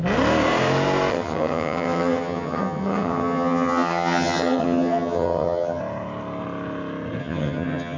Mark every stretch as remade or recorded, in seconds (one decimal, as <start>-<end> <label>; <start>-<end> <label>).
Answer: 0.0-1.1 recorded; 1.1-5.8 remade; 5.8-7.2 recorded; 7.2-8.0 remade